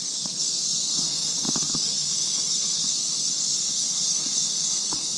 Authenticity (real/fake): fake